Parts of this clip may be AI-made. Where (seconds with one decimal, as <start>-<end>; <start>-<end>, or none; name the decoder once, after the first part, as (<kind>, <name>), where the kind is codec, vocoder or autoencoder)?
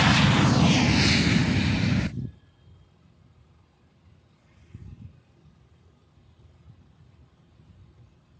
none